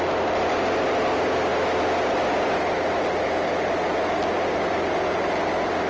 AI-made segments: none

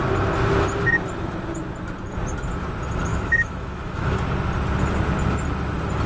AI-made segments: 3.1-4.2 (autoencoder, DAC-VAE)

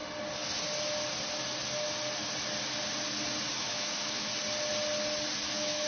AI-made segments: 3.5-4.3 (autoencoder, DAC-VAE); 5.5-5.9

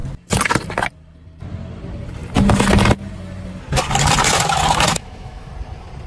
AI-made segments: 4.9-5.5 (autoencoder, DAC-VAE)

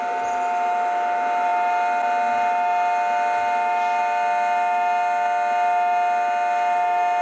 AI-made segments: none

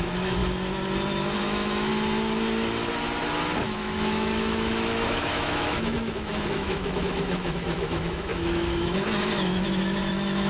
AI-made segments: 0.0-0.4 (autoencoder, DAC-VAE); 1.4-1.9; 3.6-10.5